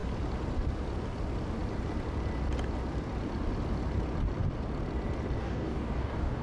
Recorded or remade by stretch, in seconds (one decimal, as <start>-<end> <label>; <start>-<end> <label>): 0.0-5.4 recorded; 5.4-6.4 remade